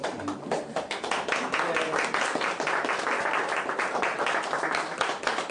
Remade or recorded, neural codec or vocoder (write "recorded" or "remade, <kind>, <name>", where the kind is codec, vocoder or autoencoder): recorded